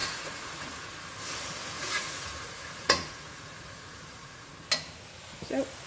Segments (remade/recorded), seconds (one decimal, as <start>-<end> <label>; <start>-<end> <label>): 0.0-1.0 remade; 1.0-1.6 recorded; 1.6-4.5 remade; 4.5-5.9 recorded